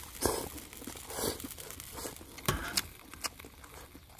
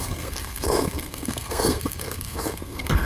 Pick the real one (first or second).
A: first